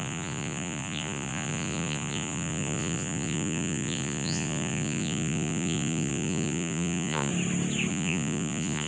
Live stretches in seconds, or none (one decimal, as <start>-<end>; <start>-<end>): 7.3-7.9